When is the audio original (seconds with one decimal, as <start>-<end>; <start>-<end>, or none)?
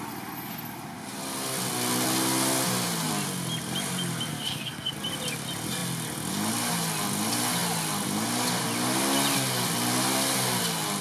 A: 0.0-4.3; 4.9-11.0